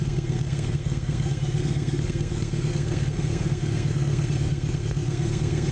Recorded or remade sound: remade